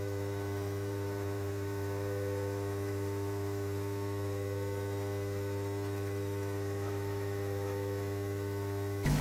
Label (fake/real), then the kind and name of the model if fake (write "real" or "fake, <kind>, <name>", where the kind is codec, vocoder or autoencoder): fake, autoencoder, DAC-VAE